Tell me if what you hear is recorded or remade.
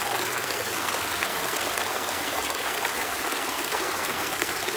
remade